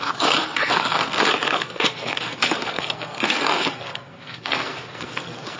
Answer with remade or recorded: remade